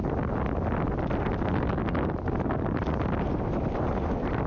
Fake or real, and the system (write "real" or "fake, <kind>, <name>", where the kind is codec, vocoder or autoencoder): real